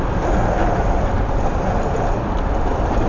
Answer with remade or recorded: recorded